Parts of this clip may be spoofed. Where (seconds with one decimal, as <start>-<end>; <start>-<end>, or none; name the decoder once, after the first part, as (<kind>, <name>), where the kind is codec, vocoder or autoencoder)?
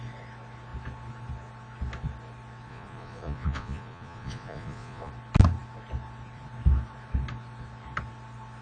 2.7-5.1 (vocoder, Vocos)